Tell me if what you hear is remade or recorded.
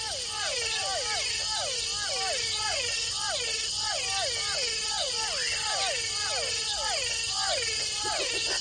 recorded